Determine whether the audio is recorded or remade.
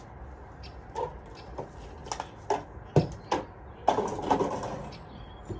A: recorded